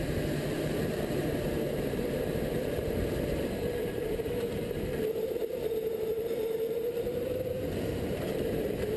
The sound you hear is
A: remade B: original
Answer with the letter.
A